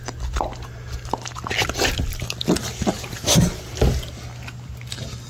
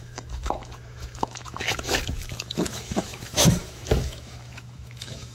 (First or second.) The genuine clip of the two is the first